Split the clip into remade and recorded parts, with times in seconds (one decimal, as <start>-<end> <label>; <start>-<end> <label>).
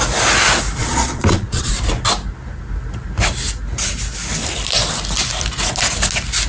0.0-0.8 recorded; 0.8-1.7 remade; 1.7-6.5 recorded